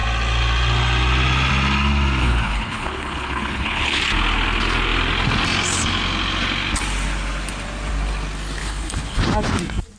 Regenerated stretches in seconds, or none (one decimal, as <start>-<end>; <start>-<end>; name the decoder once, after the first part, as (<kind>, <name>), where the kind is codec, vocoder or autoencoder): 2.2-4.0 (codec, HILCodec); 8.6-9.2